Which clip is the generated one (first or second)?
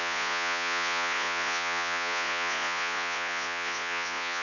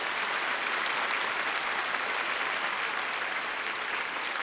first